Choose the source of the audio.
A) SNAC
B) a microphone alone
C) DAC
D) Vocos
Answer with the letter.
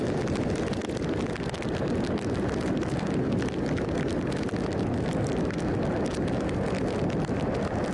B